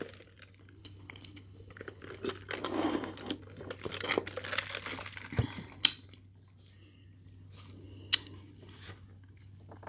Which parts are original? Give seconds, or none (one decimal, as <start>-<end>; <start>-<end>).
0.0-0.8; 2.0-9.9

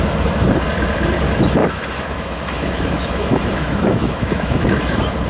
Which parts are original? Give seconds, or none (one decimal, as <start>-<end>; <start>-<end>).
0.0-1.6; 4.8-5.3

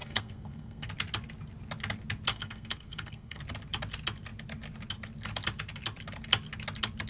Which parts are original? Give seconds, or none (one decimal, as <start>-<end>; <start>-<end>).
0.9-2.3; 3.4-7.1

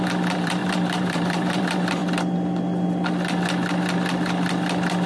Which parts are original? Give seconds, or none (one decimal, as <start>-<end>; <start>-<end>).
2.0-5.1

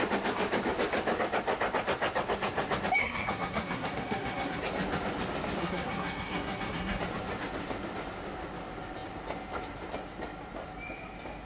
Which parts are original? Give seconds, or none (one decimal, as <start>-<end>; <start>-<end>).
0.0-3.0; 4.6-5.6; 7.0-11.5